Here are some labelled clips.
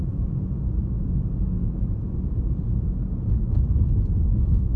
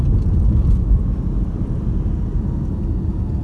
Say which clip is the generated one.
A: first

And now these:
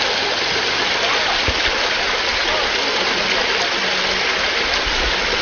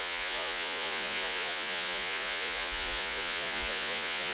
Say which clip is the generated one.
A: second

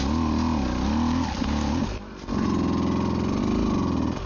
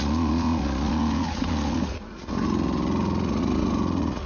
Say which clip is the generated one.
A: second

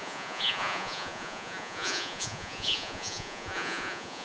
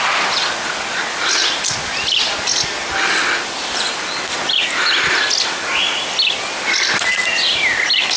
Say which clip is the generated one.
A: first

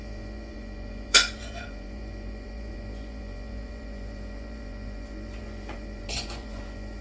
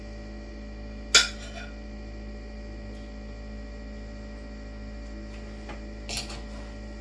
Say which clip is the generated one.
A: first